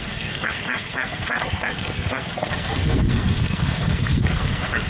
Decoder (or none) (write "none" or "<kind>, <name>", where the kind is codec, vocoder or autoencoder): codec, SNAC